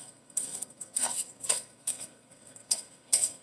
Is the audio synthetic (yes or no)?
yes